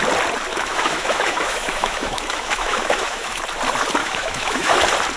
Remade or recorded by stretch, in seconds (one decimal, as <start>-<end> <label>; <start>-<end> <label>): 0.0-0.5 recorded; 0.5-3.4 remade; 3.4-4.0 recorded; 4.0-4.7 remade; 4.7-5.2 recorded